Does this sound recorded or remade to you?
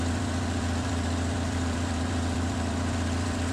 remade